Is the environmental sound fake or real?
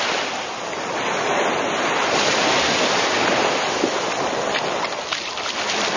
real